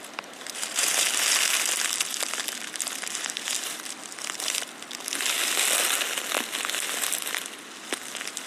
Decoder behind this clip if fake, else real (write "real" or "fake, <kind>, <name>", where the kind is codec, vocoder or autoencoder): real